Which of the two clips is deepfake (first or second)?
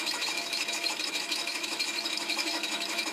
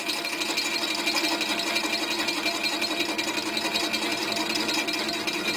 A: first